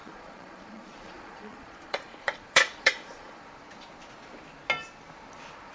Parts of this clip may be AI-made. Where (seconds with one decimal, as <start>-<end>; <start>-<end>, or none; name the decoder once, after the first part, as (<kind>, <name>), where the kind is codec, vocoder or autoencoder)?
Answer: 0.0-3.4 (vocoder, Vocos)